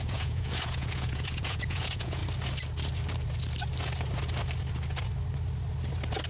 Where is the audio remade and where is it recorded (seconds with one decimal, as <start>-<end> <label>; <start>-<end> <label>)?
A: 0.0-2.2 remade; 2.2-6.3 recorded